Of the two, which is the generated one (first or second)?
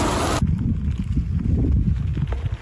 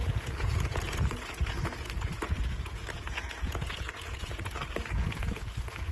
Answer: second